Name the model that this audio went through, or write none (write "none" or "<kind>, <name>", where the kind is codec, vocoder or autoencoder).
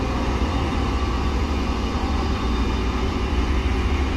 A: vocoder, Vocos